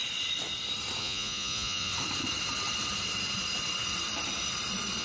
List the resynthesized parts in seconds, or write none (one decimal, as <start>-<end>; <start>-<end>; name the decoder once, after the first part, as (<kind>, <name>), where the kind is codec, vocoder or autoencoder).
1.0-1.9 (vocoder, Vocos)